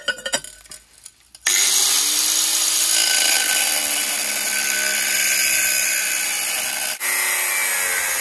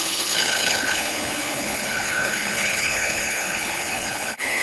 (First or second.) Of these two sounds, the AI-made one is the second